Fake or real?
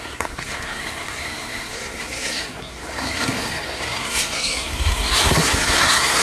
fake